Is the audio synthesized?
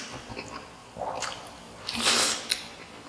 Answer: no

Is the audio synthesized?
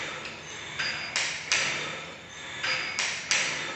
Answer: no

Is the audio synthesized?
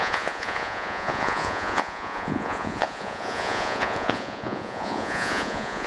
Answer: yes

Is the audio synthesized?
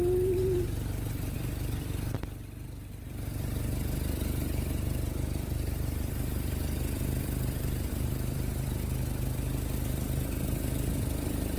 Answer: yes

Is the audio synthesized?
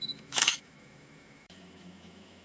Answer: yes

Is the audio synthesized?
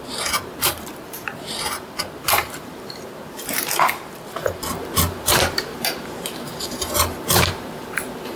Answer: yes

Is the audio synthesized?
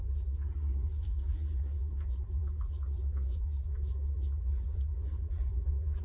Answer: yes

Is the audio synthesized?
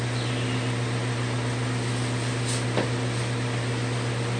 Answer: no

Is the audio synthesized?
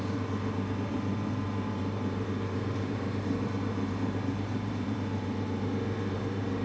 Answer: yes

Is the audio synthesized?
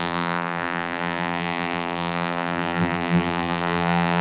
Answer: yes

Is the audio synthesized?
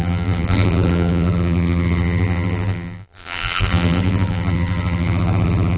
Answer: yes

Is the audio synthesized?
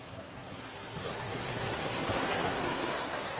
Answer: yes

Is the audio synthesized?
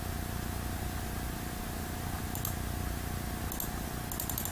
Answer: no